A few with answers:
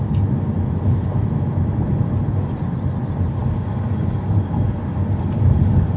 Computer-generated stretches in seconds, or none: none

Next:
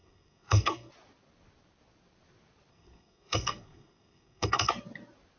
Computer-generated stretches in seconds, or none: 0.0-0.9 (codec, SNAC); 2.7-4.7

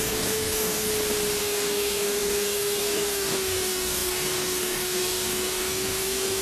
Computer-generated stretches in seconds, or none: 0.0-0.9 (codec, DAC); 1.4-6.4

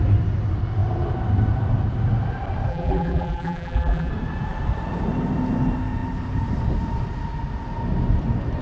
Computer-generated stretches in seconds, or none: 2.7-4.1 (vocoder, BigVGAN v2)

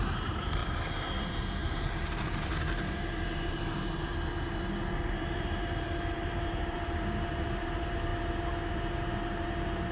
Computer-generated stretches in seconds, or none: 0.0-0.6 (vocoder, BigVGAN v2); 1.2-4.1; 4.8-8.1; 8.7-9.9